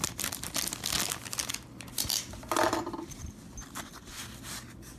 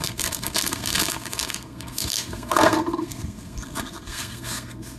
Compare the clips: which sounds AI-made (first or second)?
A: second